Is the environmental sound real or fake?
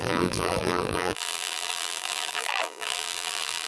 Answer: fake